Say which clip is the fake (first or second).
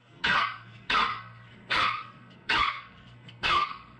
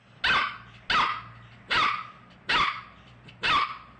first